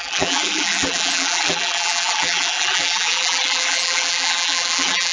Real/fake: fake